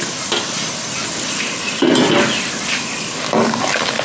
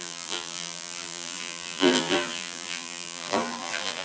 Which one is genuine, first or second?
first